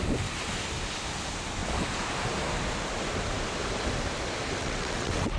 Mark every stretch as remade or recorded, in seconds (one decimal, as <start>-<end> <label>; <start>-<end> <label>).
0.0-4.6 recorded; 4.6-5.4 remade